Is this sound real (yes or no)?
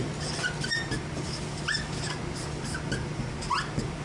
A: yes